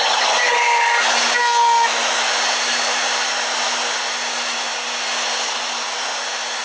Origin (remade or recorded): recorded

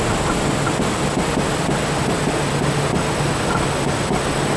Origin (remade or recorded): recorded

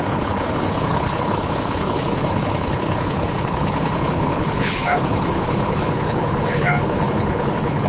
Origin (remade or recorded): remade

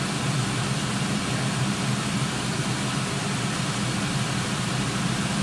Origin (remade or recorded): recorded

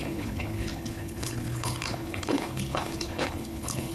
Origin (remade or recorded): remade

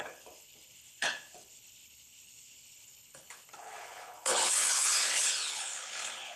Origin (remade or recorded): remade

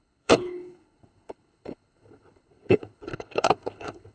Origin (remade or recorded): remade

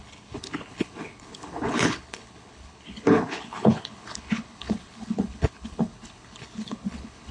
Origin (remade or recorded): remade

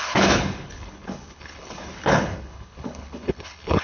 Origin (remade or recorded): remade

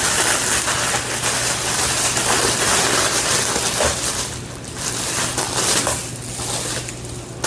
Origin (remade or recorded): recorded